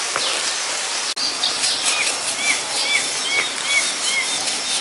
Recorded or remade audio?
recorded